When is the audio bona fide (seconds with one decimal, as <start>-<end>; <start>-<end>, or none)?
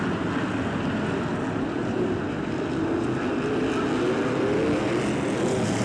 0.0-5.8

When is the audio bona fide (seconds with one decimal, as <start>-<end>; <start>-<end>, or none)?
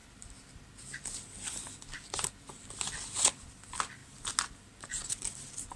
0.0-3.5; 4.0-4.6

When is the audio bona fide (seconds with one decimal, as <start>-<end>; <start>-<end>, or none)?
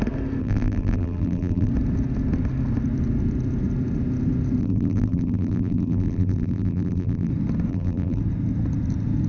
0.0-0.4; 1.7-4.6; 7.3-7.7; 8.2-9.3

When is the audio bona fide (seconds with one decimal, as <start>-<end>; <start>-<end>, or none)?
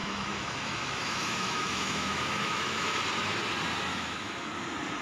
3.0-3.9; 4.5-5.0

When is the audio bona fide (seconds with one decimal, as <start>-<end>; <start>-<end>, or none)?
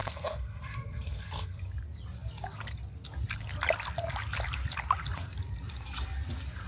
1.6-6.7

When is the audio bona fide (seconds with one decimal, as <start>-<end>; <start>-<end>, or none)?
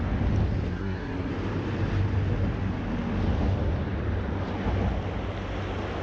0.0-0.7; 1.3-6.0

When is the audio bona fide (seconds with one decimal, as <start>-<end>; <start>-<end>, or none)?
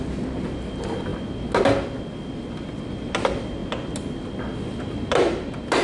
0.0-5.8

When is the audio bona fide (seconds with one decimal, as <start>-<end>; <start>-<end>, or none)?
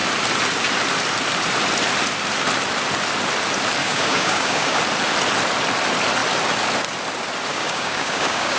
0.0-3.8; 4.8-7.5